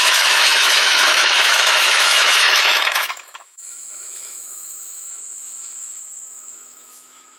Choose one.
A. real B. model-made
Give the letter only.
B